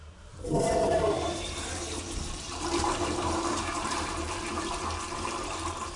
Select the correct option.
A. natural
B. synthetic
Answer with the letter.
B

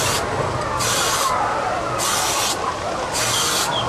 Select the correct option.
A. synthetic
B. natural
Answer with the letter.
B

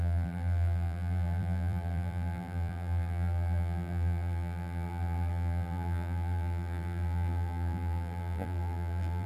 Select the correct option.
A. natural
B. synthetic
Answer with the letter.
B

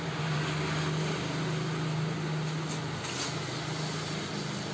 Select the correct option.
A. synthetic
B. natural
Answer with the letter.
B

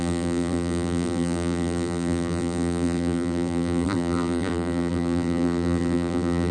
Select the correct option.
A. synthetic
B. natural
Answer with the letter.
A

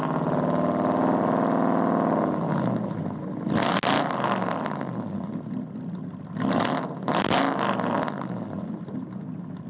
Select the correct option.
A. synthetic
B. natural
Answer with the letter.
B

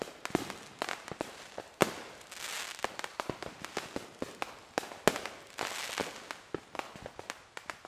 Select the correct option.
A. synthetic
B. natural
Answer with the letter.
B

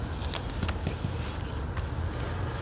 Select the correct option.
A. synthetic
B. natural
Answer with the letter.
B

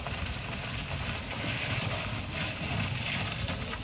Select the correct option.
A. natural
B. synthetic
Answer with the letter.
B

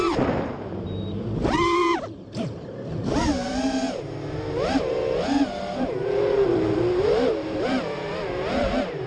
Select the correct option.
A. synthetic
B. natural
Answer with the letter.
A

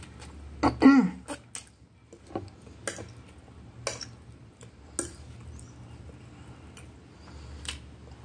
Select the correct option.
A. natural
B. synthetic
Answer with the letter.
A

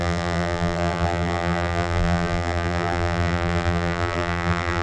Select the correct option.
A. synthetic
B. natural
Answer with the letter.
A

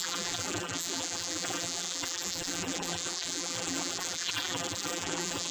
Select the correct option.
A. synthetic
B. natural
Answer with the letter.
A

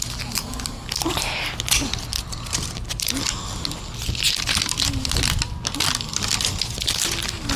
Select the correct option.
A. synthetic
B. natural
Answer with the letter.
B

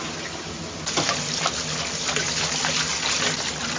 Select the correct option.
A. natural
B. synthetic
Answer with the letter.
A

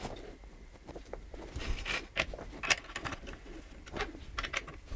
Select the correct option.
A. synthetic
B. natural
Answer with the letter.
B